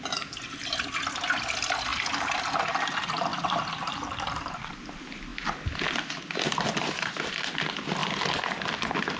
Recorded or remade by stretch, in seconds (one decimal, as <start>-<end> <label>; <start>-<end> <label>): 0.0-3.3 recorded; 3.3-4.7 remade; 4.7-9.2 recorded